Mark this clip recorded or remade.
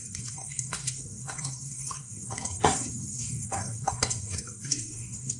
remade